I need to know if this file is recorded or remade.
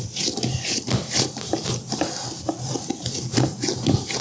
recorded